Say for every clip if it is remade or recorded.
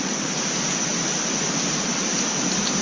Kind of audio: remade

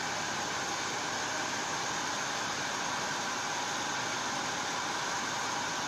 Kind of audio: recorded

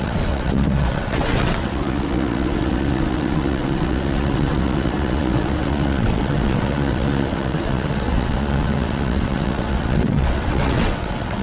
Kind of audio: remade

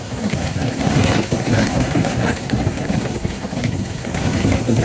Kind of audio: remade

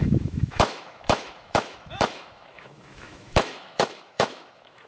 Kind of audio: remade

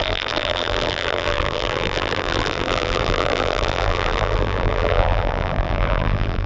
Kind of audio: remade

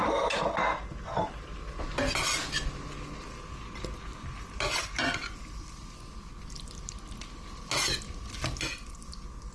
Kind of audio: recorded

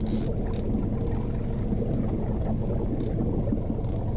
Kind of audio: recorded